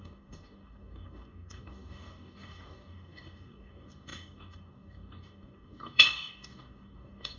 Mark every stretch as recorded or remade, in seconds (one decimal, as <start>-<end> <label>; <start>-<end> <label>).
0.0-7.4 remade